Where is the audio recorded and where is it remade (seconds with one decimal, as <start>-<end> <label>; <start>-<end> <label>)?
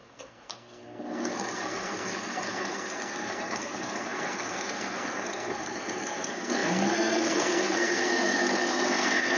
0.0-9.4 remade